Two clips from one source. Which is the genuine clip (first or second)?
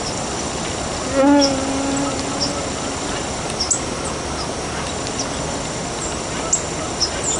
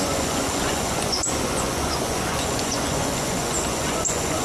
first